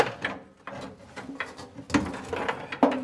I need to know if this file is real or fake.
real